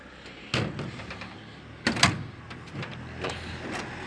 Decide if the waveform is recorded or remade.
recorded